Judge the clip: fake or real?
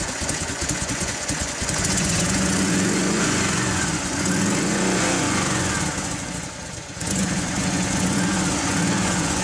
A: fake